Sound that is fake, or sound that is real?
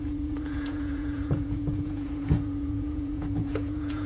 fake